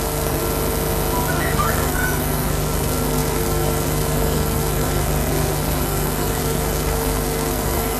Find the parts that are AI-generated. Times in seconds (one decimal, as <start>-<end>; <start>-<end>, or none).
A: 0.0-0.4; 1.3-8.0